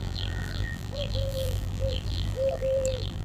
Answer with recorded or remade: remade